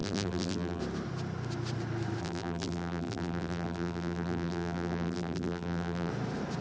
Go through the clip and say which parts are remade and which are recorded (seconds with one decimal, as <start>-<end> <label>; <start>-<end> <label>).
0.0-0.8 remade; 0.8-2.2 recorded; 2.2-6.1 remade; 6.1-6.6 recorded